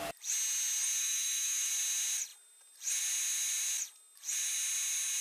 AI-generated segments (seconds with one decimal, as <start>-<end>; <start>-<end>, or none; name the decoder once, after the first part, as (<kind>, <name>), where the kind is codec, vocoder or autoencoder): 1.0-1.7 (autoencoder, DAC-VAE)